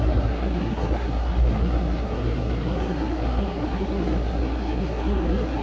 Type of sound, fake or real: fake